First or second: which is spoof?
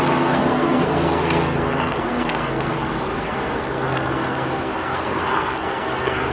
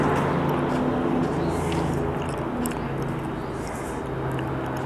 first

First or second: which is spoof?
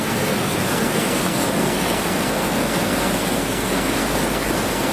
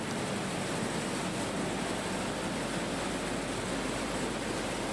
first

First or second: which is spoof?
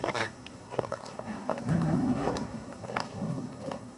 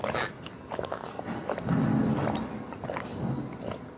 first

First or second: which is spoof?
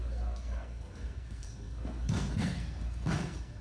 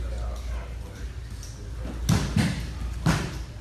first